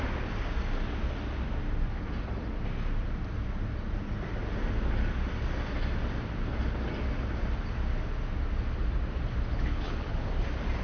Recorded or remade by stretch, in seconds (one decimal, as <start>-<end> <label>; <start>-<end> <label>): 0.0-9.5 recorded; 9.5-10.3 remade; 10.3-10.8 recorded